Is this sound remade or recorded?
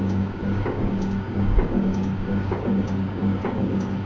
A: remade